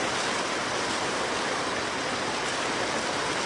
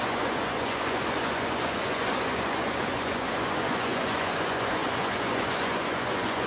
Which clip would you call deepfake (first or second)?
second